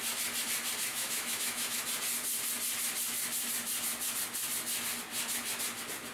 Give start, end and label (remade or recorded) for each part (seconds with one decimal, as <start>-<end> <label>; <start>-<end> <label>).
0.0-0.8 recorded; 0.8-1.8 remade; 1.8-6.1 recorded